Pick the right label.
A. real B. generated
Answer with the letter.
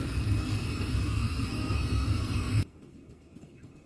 B